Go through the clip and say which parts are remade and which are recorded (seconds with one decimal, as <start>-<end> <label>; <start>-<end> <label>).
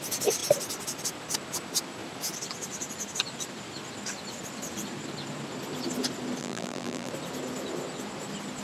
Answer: 0.0-6.4 recorded; 6.4-7.1 remade; 7.1-8.6 recorded